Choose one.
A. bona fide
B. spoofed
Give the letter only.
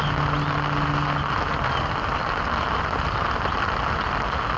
A